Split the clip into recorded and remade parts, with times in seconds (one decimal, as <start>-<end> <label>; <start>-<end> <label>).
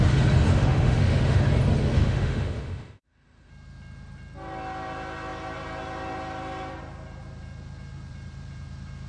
0.0-0.5 recorded; 0.5-1.4 remade; 1.4-2.0 recorded; 2.0-3.5 remade; 3.5-9.1 recorded